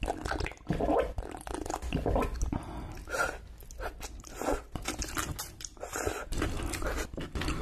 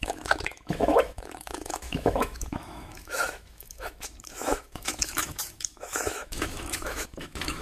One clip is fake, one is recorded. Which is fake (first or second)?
second